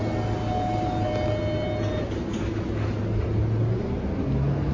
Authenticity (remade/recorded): recorded